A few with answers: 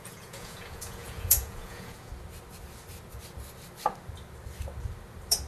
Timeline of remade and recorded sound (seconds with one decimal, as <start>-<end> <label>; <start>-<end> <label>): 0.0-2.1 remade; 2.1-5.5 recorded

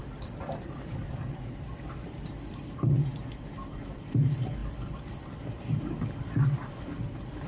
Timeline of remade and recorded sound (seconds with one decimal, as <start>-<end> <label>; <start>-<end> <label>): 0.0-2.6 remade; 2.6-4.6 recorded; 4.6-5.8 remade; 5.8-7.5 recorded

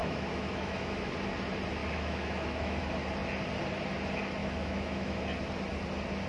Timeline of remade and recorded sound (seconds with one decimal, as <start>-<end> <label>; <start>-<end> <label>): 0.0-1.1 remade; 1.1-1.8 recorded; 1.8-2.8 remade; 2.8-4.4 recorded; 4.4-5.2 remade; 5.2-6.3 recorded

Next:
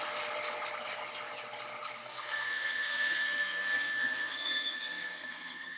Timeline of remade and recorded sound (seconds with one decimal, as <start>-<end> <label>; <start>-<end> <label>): 0.0-2.0 recorded; 2.0-5.8 remade

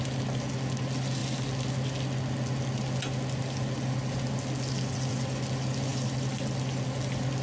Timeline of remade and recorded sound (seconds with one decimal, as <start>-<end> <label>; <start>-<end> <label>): 0.0-7.4 recorded